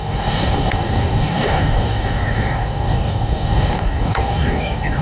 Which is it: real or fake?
fake